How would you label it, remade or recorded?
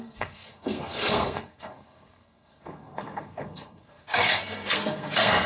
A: remade